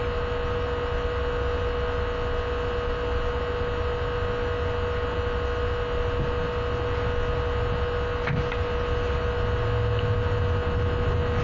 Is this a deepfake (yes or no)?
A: no